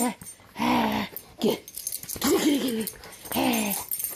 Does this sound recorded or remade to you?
recorded